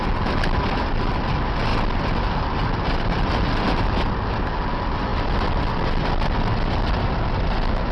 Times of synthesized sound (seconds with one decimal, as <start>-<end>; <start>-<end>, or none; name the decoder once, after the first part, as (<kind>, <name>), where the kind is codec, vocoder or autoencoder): none